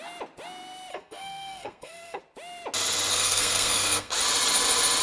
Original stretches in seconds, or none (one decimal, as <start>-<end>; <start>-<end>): 0.0-0.9; 2.2-3.1; 4.1-5.0